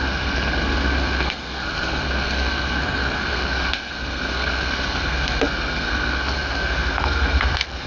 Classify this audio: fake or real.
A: fake